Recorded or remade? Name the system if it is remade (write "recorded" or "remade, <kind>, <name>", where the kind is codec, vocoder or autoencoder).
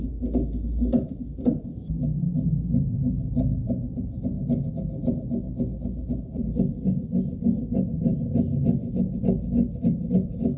recorded